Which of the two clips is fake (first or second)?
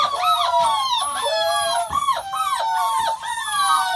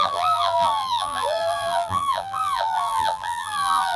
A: second